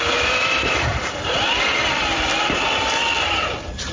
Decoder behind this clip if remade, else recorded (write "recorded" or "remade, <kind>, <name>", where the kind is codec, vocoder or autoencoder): remade, vocoder, BigVGAN v2